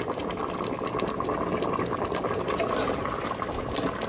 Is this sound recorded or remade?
recorded